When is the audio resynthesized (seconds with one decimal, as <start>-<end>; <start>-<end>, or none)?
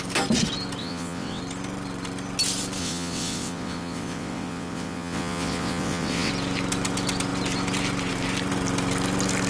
0.8-1.4; 2.8-6.3